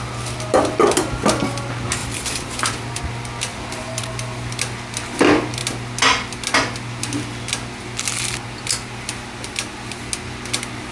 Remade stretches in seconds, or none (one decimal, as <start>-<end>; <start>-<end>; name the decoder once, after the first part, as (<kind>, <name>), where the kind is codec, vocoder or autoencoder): 2.0-3.0 (vocoder, BigVGAN v2); 3.5-4.0